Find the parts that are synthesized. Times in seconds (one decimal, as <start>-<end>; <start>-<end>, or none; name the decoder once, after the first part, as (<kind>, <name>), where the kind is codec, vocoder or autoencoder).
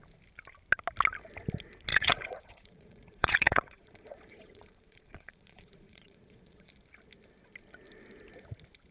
1.9-6.7 (vocoder, Vocos)